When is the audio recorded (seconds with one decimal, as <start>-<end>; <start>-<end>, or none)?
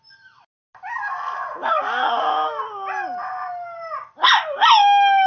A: 0.0-5.3